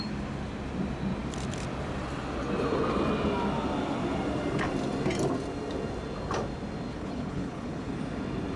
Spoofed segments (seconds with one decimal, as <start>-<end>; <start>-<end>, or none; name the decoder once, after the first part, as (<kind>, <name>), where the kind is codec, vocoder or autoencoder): 6.9-7.9 (codec, HILCodec)